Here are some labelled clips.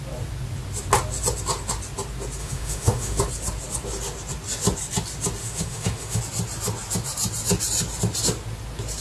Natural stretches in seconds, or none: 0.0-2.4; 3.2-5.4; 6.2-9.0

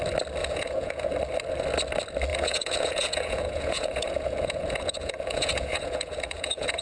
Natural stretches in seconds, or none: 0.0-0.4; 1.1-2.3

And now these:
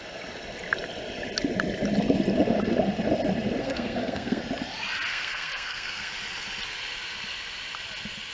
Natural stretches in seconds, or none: 0.0-3.6; 4.4-5.1; 6.1-8.3

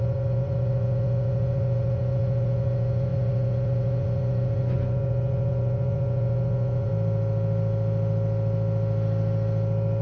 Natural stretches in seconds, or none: 6.9-10.0